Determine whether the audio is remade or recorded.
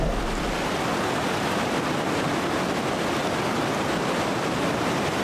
recorded